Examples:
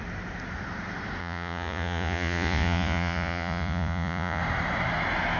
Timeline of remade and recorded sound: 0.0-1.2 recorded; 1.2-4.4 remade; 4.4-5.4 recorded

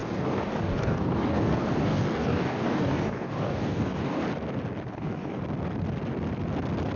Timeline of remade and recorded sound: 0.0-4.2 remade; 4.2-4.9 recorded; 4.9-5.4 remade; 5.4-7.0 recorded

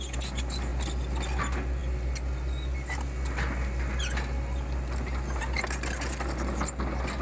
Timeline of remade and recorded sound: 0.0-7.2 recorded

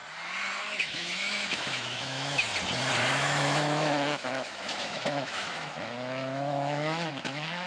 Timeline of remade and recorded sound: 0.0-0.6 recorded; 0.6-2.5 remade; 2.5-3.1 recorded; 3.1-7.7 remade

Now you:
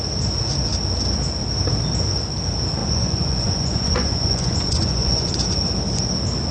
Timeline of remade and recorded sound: 0.0-2.8 recorded; 2.8-5.3 remade; 5.3-6.5 recorded

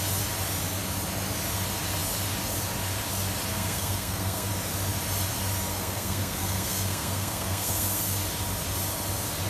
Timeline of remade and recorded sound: 0.0-3.5 recorded; 3.5-4.5 remade; 4.5-5.7 recorded; 5.7-8.2 remade; 8.2-9.5 recorded